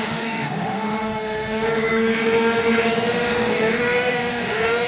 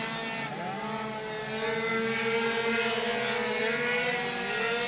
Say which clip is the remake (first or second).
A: first